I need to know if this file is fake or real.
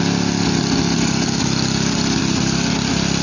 real